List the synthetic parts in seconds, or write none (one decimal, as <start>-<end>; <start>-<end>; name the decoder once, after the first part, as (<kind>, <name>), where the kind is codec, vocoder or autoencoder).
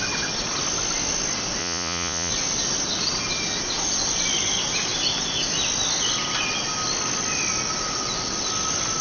1.6-2.3 (vocoder, Vocos)